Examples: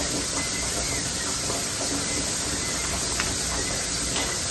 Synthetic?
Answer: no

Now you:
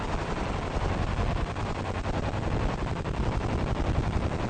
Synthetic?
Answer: no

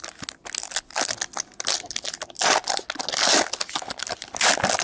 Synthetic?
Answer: no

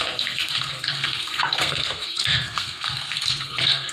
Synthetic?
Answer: yes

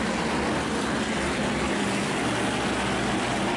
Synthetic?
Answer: no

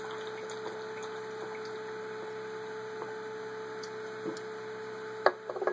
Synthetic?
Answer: no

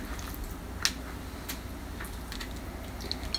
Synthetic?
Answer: no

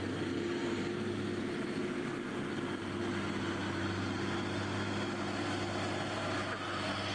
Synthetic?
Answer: no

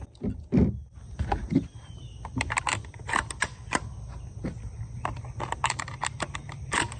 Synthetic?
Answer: no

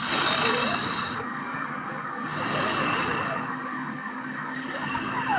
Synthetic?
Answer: yes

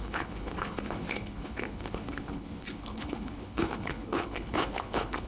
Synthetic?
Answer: yes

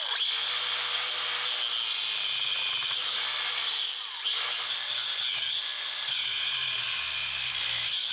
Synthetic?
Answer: no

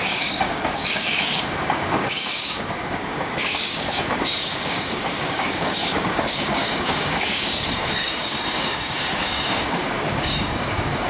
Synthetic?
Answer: yes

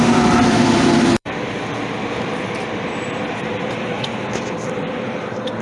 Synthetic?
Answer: yes